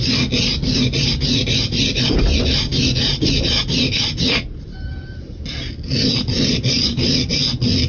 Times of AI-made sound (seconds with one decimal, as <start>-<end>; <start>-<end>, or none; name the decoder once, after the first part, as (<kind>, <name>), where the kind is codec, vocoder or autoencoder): none